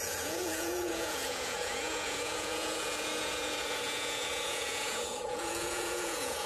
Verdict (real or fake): fake